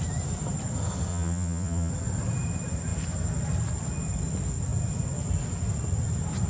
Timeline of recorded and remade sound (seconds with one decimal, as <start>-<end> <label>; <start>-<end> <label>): 0.0-1.1 recorded; 1.1-1.9 remade; 1.9-6.5 recorded